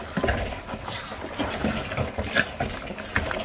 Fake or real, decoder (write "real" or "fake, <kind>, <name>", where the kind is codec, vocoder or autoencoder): real